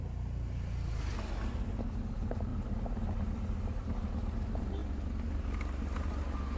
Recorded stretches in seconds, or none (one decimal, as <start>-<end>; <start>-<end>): 0.0-6.6